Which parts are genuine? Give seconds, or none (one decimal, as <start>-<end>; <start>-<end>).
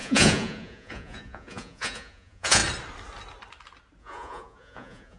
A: 2.6-4.0